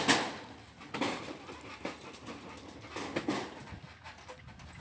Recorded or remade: recorded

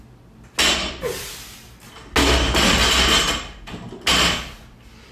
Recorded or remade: recorded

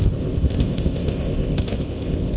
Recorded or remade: remade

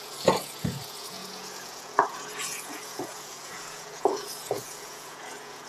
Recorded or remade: remade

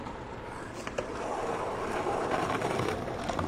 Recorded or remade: remade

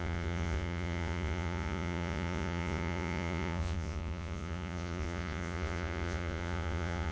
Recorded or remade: remade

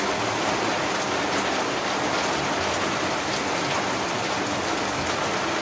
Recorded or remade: recorded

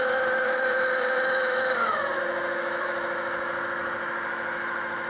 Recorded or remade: remade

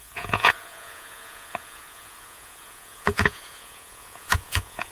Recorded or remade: remade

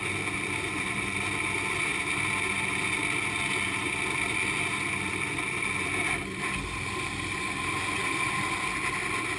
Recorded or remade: recorded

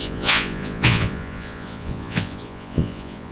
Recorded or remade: remade